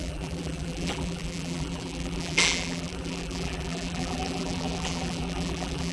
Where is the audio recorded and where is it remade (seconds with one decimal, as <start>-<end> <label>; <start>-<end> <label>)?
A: 0.0-5.9 remade